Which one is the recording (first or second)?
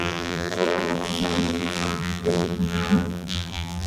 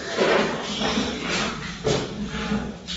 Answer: second